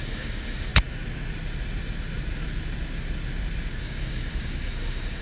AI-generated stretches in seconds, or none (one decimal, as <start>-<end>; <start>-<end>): 0.0-0.7; 3.8-5.2